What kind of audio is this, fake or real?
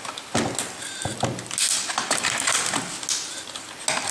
real